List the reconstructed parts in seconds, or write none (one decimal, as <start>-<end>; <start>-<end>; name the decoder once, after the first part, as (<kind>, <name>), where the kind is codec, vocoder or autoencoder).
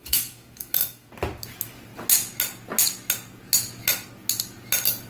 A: 0.0-1.1 (autoencoder, DAC-VAE)